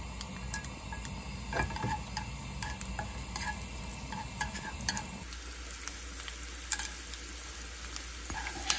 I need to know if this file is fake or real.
real